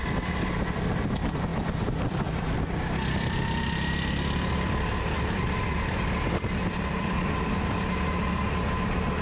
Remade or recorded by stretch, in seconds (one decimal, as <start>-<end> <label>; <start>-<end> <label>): 0.0-6.9 recorded; 6.9-7.5 remade; 7.5-9.2 recorded